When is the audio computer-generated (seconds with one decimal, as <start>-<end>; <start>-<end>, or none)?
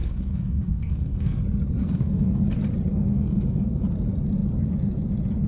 0.0-1.4; 1.8-2.4; 2.9-3.8